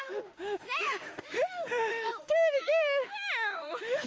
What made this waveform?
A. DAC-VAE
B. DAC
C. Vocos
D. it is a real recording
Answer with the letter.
A